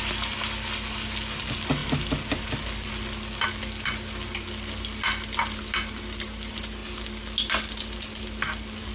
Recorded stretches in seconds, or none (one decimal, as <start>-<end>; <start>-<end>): 0.0-8.9